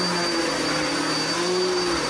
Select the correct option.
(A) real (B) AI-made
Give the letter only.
A